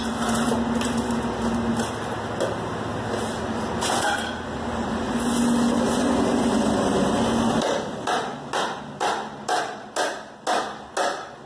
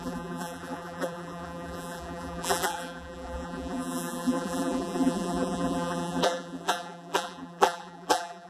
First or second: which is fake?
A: second